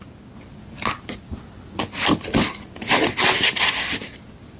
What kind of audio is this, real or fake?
real